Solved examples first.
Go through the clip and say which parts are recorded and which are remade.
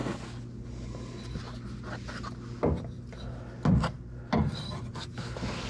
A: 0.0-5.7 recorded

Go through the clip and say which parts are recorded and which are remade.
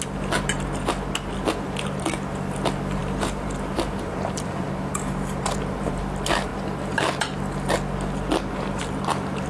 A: 0.0-3.0 recorded; 3.0-6.0 remade; 6.0-9.5 recorded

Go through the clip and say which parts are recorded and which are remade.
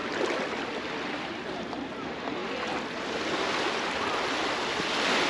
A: 0.0-5.3 recorded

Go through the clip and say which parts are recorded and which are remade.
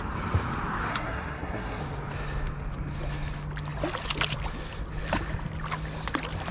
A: 0.0-0.9 recorded; 0.9-1.8 remade; 1.8-6.5 recorded